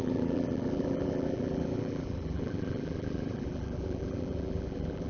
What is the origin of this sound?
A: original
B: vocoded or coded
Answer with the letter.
B